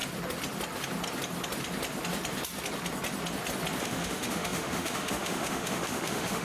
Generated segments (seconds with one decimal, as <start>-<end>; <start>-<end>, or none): 3.8-6.4